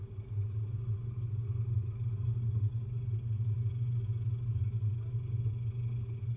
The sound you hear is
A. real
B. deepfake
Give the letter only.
A